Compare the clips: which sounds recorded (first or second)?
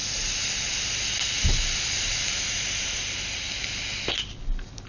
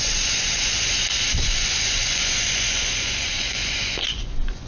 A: first